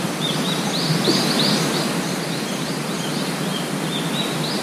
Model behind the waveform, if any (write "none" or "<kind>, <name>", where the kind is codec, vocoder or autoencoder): none